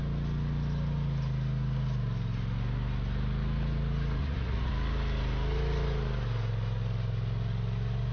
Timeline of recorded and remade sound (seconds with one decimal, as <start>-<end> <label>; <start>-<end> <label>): 0.0-4.2 recorded; 4.2-4.7 remade; 4.7-8.1 recorded